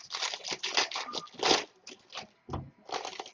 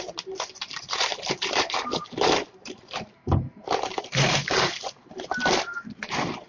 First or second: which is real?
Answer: first